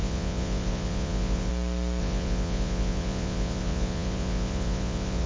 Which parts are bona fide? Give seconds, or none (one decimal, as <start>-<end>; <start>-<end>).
1.5-2.0